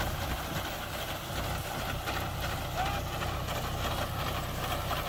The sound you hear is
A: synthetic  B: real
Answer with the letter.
B